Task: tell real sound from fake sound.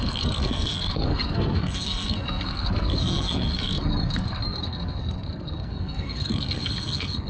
fake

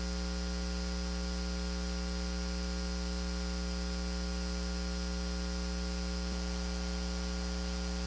real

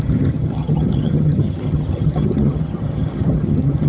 fake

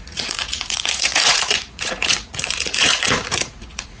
fake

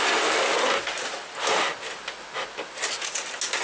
real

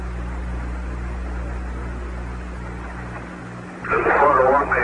real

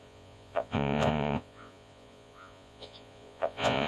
fake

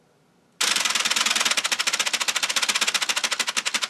real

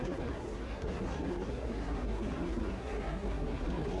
fake